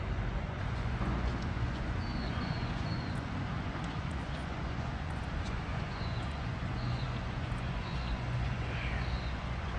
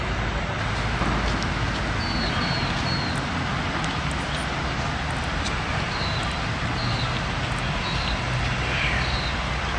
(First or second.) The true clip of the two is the second